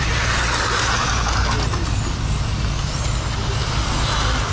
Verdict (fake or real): real